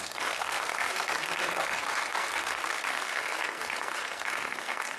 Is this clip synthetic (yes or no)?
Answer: yes